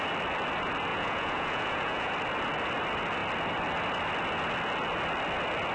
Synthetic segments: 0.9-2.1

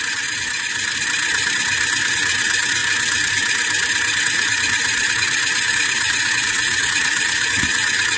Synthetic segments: 0.0-0.9; 2.1-2.8; 4.2-8.2

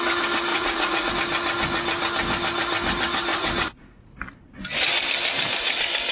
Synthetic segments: 0.5-1.1; 3.3-4.2